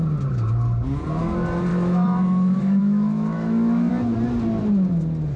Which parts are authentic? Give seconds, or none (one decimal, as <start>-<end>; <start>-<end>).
0.0-1.7; 3.9-5.4